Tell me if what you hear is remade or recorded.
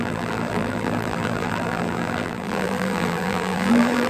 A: remade